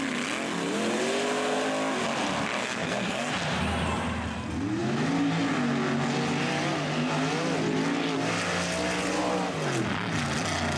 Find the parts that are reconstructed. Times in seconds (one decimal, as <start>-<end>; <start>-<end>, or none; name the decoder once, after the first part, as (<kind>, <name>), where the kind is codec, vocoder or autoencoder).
2.6-3.3 (codec, SNAC)